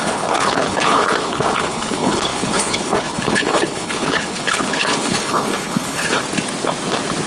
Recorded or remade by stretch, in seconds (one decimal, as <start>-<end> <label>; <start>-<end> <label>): 0.0-6.2 remade; 6.2-7.3 recorded